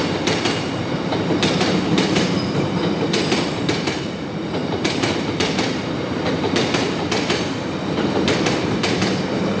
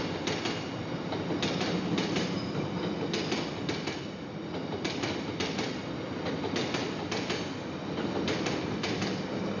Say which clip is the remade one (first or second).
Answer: first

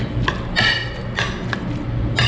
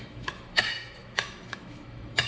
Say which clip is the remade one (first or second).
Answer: second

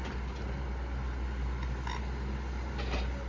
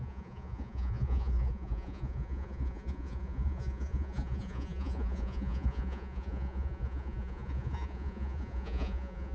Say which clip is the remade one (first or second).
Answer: second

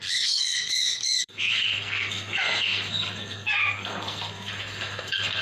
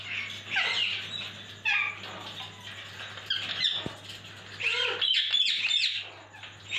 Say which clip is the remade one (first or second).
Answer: first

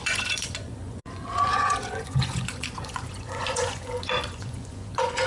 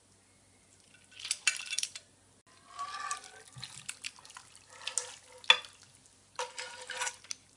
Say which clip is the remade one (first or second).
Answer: first